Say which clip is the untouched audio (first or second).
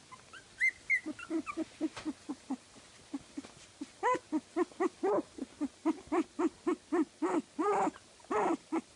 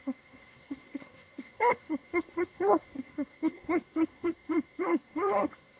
first